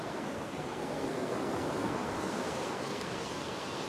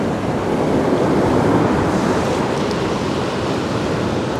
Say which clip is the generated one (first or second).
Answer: first